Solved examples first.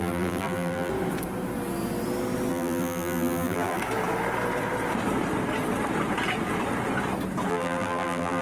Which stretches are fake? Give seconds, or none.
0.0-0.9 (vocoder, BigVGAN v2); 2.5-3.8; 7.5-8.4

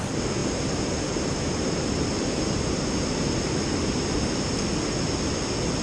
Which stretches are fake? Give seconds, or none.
none

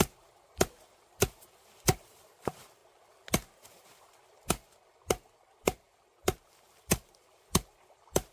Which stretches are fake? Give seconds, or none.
0.0-2.8 (vocoder, BigVGAN v2); 5.5-8.3

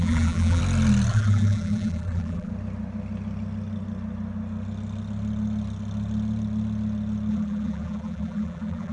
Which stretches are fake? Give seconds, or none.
0.0-0.6 (vocoder, BigVGAN v2); 1.1-2.5; 7.3-8.9

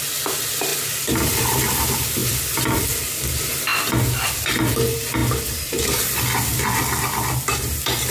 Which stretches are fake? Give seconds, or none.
0.7-1.4 (vocoder, BigVGAN v2); 2.2-2.8; 5.2-5.8

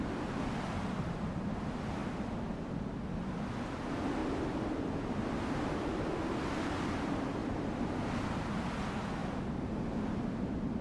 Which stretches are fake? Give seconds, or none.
2.0-2.9 (vocoder, BigVGAN v2); 4.2-4.8; 7.4-7.9

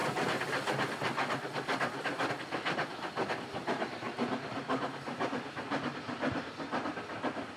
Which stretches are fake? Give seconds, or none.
none